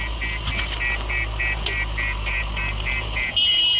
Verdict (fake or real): real